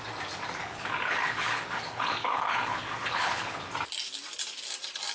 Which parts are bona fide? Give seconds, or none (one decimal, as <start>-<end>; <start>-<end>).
0.0-0.6; 3.7-5.1